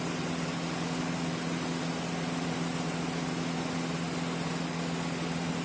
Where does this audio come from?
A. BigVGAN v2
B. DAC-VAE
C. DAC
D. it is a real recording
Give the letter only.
D